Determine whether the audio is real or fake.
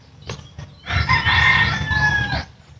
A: real